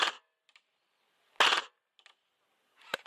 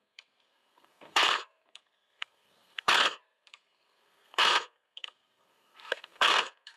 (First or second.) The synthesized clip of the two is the second